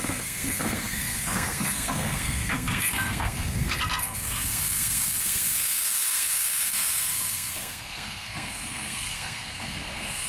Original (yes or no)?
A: no